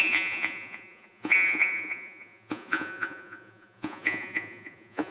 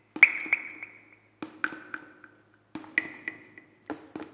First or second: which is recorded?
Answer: second